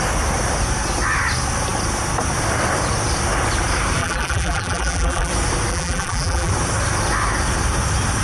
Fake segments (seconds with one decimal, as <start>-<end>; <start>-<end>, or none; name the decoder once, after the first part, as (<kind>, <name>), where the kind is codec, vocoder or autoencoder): 4.0-5.3 (vocoder, BigVGAN v2); 5.7-6.5